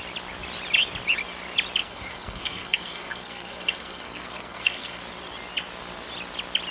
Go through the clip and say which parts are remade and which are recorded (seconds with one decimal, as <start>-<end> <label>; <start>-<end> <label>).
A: 0.0-1.8 recorded; 1.8-5.0 remade; 5.0-6.7 recorded